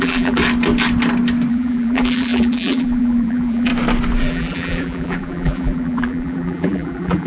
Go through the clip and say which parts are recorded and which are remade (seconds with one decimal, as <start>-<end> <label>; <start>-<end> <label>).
0.0-0.4 remade; 0.4-1.5 recorded; 1.5-3.7 remade; 3.7-4.2 recorded; 4.2-7.3 remade